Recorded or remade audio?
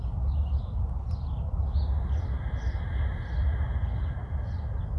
recorded